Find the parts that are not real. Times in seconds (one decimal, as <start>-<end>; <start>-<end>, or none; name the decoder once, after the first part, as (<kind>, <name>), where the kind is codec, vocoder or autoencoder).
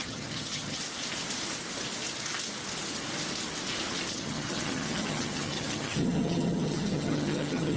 0.0-0.8 (vocoder, HiFi-GAN); 4.1-7.8